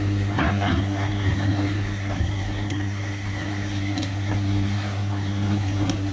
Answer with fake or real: fake